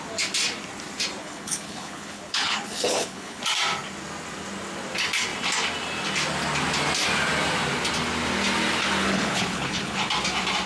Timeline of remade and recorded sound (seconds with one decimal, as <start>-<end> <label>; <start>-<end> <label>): 0.0-1.2 recorded; 1.2-3.4 remade; 3.4-9.0 recorded; 9.0-10.1 remade; 10.1-10.7 recorded